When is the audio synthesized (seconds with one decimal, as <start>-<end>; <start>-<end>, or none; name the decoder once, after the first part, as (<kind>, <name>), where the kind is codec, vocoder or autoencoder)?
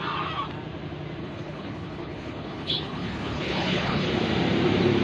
1.2-4.1 (codec, HILCodec)